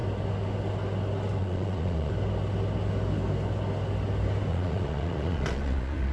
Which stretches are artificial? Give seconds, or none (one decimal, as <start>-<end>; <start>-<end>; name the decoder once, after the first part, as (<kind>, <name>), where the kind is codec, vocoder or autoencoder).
1.4-2.1 (vocoder, Vocos); 4.5-6.1

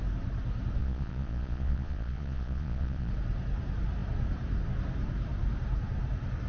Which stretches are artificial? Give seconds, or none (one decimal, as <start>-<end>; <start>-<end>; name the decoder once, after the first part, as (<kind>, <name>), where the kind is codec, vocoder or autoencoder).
0.8-3.1 (vocoder, Vocos)

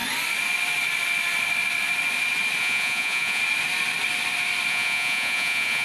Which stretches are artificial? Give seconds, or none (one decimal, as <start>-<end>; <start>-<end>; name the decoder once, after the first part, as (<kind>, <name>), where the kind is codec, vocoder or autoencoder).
2.6-3.4 (vocoder, Vocos); 4.7-5.8